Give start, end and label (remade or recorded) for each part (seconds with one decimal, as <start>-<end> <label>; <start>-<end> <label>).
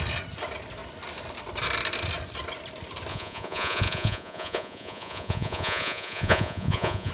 0.0-3.1 recorded; 3.1-7.1 remade